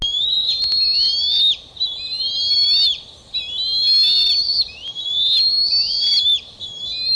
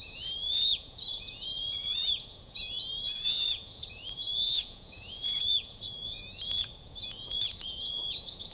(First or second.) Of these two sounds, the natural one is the first